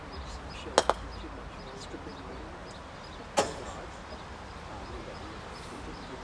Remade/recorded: recorded